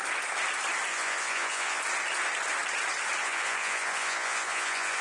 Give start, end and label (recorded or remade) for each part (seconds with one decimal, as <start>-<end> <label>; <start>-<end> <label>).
0.0-0.9 recorded; 0.9-1.8 remade; 1.8-3.2 recorded; 3.2-5.0 remade